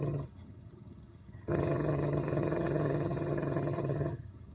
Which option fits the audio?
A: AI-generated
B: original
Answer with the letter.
A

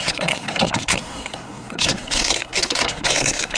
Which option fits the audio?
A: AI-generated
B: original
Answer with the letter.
A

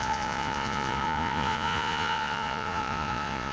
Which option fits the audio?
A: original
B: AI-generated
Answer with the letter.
B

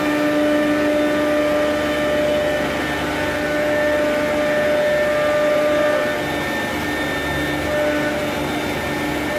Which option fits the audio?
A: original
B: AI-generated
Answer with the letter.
A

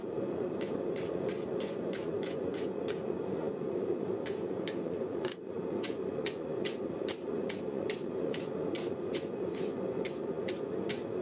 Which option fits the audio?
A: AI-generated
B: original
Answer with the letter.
A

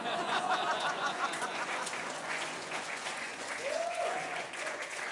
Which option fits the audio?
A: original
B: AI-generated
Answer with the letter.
B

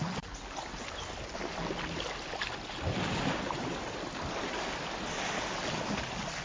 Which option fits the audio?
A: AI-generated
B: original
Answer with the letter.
B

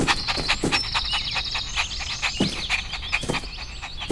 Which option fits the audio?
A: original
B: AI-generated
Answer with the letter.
A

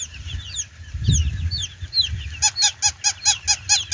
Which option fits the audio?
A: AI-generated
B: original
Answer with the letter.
B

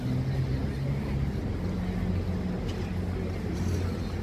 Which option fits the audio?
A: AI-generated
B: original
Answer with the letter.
B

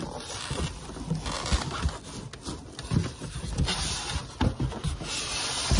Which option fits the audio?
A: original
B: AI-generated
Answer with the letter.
A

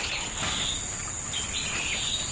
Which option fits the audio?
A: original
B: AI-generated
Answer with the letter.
A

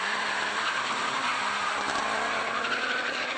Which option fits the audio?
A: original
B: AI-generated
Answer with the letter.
A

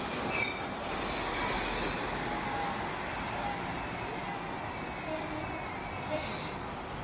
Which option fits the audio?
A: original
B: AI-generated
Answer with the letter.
A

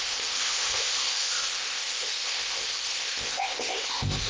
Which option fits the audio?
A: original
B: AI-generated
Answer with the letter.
B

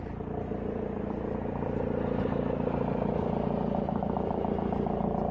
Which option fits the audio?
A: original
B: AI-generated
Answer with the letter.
A